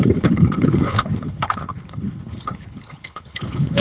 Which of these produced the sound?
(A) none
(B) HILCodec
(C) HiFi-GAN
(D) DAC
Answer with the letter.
B